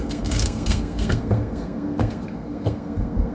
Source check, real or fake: fake